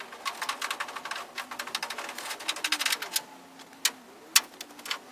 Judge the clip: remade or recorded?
recorded